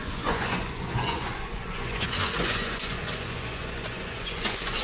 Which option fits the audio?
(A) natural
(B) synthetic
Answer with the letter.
B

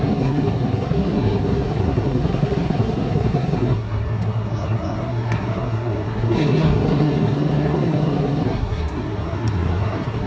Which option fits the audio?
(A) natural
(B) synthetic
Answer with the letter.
B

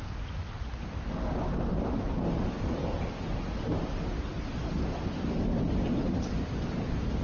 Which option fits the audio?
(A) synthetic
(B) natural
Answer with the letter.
B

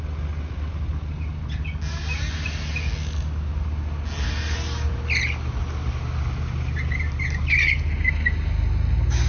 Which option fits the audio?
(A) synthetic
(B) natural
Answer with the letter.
B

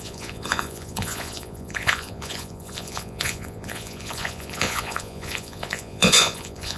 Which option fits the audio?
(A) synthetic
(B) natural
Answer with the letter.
A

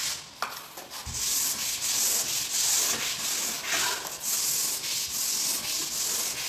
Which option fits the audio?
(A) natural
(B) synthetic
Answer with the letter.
A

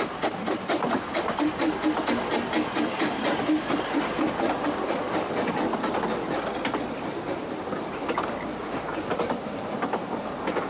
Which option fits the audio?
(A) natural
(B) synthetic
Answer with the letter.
A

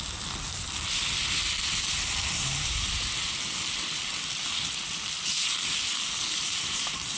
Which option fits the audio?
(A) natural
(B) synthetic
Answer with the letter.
A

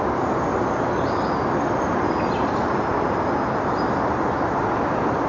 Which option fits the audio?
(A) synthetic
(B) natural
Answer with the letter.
B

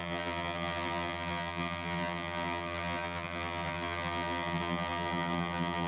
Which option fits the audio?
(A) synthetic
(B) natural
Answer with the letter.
A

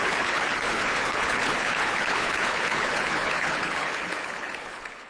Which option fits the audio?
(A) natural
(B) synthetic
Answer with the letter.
B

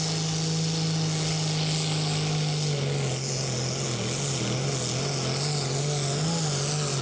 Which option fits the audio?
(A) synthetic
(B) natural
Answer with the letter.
B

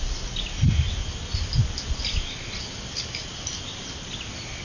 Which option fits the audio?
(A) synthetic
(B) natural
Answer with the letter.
B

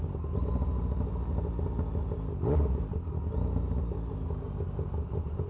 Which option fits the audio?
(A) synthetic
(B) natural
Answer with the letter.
B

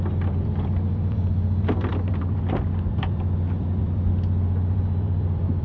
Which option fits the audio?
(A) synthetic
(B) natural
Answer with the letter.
A